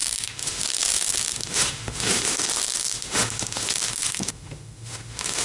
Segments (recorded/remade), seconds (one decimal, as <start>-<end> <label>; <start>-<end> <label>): 0.0-5.4 remade